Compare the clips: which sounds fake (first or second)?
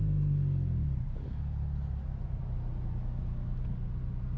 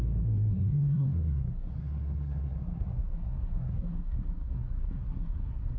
second